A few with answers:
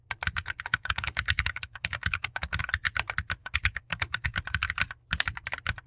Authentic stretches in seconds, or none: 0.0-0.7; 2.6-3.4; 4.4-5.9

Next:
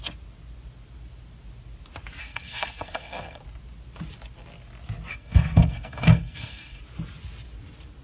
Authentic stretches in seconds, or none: 0.0-2.2; 3.4-5.1; 6.8-8.0

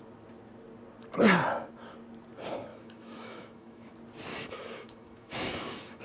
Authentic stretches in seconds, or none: 0.0-2.7; 3.9-4.3

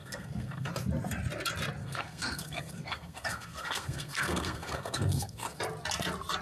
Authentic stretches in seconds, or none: 0.7-1.8; 5.6-6.4

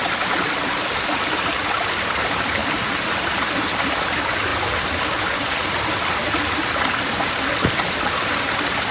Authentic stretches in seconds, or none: 0.0-8.9

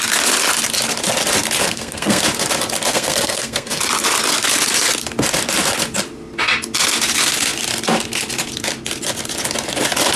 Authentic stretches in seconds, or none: 0.0-1.6; 2.2-2.9; 3.8-10.2

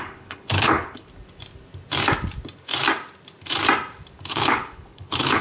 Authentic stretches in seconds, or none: 1.1-4.3

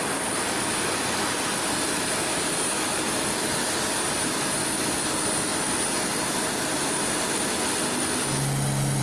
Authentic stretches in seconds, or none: 0.0-9.0